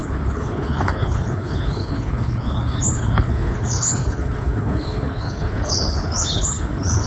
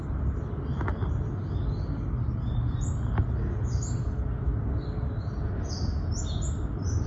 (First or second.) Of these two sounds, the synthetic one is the first